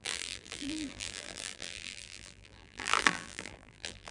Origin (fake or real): fake